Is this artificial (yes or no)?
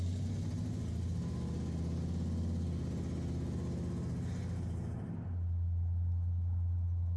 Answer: no